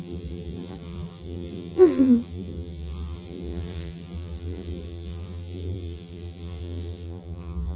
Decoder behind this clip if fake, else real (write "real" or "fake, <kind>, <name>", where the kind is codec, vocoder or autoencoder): fake, vocoder, BigVGAN v2